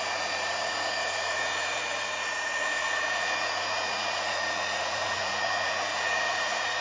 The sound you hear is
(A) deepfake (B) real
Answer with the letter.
A